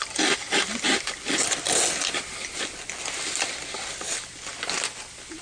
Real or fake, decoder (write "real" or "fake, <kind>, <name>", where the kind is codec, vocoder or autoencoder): real